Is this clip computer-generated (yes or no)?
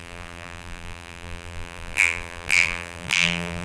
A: yes